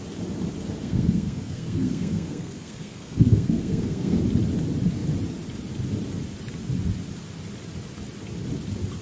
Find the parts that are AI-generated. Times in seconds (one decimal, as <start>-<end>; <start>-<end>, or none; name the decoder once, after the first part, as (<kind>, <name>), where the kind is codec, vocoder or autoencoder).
0.8-4.2 (codec, SNAC)